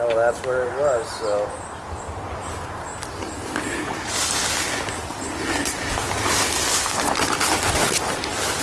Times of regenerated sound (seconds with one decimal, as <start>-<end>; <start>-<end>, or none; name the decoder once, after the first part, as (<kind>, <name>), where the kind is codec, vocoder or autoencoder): none